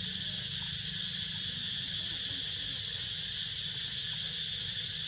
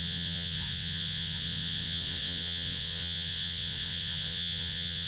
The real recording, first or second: first